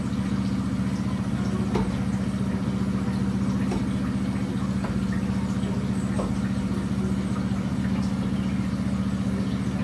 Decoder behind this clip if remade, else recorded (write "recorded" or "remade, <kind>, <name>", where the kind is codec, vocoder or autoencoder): recorded